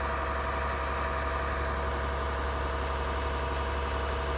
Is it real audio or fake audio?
real